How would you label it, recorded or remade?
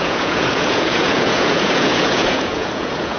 remade